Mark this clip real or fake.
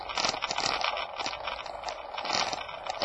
real